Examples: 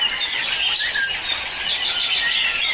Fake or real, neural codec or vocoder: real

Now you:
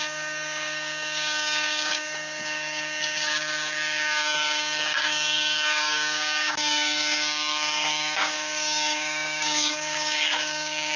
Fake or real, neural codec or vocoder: fake, codec, DAC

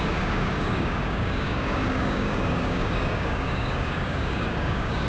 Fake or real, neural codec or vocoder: fake, codec, DAC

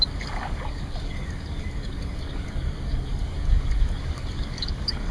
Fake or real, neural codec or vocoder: fake, codec, DAC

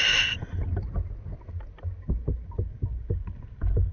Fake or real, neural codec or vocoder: real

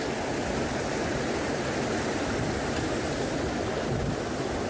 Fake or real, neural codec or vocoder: real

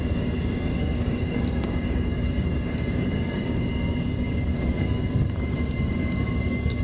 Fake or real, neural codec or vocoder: fake, codec, DAC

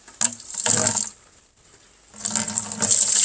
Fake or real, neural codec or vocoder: real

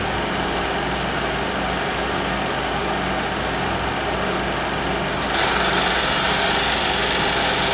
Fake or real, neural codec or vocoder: real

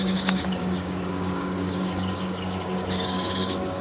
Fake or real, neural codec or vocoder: fake, codec, DAC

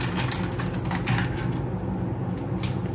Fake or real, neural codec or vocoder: real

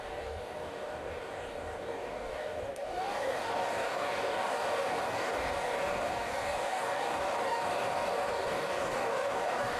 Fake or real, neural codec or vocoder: fake, codec, DAC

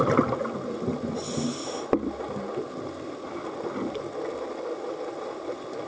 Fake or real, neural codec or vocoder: real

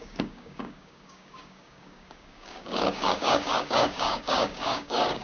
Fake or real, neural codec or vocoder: fake, codec, DAC